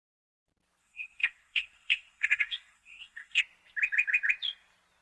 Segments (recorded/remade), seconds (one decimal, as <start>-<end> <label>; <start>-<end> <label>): 0.0-0.8 recorded; 0.8-3.4 remade; 3.4-5.0 recorded